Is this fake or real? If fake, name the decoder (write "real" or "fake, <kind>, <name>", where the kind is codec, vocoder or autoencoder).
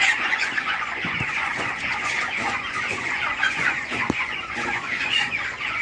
fake, vocoder, Vocos